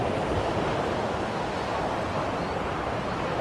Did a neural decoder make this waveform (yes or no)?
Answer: no